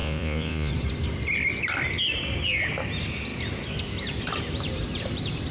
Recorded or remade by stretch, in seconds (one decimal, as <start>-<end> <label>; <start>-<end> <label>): 0.0-0.7 remade; 0.7-5.5 recorded